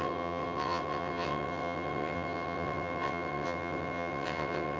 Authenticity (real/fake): fake